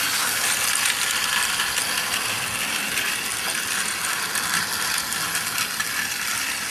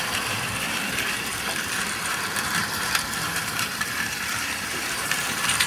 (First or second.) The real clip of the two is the first